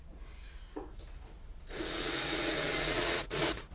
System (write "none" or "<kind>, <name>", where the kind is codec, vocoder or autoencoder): vocoder, Vocos